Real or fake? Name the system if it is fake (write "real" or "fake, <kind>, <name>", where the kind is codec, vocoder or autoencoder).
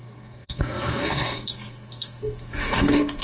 fake, codec, SNAC